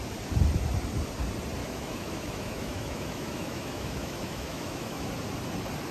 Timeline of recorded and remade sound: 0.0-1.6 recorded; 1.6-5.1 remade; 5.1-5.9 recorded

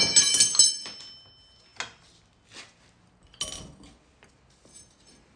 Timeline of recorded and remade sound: 0.0-5.4 recorded